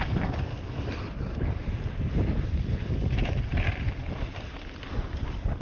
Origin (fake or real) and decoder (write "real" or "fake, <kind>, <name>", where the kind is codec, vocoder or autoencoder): real